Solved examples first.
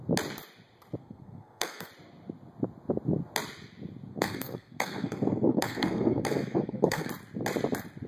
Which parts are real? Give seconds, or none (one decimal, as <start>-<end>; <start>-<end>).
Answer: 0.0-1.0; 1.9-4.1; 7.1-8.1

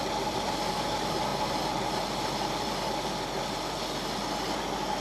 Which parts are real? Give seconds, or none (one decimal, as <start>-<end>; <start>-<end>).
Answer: 0.0-5.0

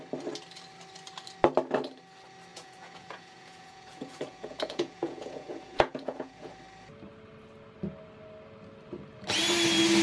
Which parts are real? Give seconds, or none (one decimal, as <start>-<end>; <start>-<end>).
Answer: 0.0-2.5; 6.5-10.0